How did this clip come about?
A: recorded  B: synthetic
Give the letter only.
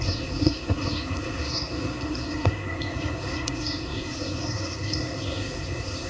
B